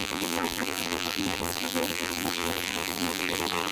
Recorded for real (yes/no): no